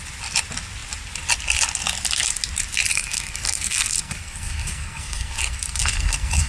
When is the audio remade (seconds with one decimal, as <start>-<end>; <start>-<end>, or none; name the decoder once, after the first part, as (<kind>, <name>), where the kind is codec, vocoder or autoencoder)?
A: 2.9-6.5 (codec, SNAC)

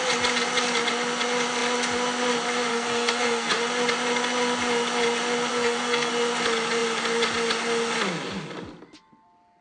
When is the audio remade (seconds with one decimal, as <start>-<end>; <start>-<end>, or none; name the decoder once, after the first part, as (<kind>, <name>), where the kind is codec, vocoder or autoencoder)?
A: 2.7-3.5 (codec, SNAC); 5.5-6.1

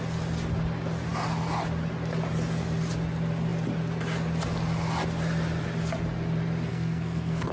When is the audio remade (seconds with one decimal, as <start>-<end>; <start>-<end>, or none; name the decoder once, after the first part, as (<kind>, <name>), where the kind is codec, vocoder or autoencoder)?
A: 6.7-7.5 (codec, SNAC)

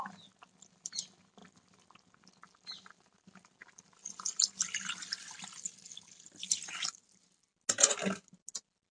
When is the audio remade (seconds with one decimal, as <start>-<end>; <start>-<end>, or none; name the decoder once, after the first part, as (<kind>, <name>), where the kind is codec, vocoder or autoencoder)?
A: none